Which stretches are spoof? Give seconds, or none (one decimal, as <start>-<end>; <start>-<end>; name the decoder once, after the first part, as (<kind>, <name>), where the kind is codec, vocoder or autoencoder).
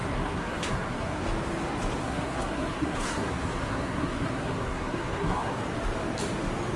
0.0-1.2 (codec, SNAC); 2.0-5.5